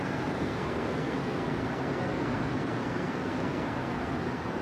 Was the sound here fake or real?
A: fake